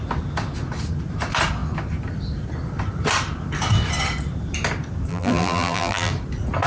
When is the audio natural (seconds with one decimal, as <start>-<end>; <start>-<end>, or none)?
0.0-5.1; 6.1-6.7